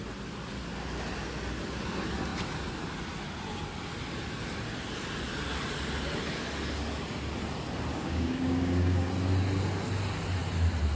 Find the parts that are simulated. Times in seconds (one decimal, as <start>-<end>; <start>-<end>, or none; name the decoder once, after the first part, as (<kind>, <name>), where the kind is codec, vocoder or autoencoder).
7.9-9.1 (codec, DAC)